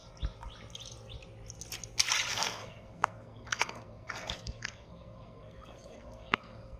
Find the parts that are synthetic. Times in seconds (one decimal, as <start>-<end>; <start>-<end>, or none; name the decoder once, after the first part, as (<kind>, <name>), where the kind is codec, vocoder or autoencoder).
2.3-6.8 (codec, SNAC)